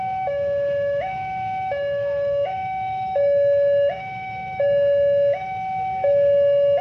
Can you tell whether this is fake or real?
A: fake